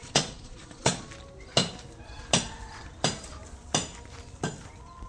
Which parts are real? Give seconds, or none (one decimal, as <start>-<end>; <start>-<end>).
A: 1.1-5.1